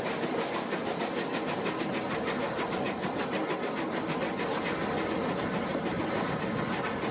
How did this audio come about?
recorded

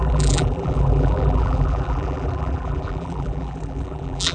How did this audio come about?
remade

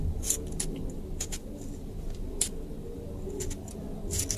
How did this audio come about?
recorded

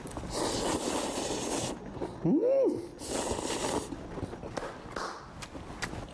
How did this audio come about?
recorded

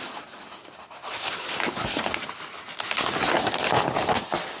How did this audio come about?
recorded